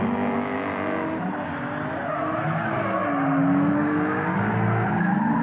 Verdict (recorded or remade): recorded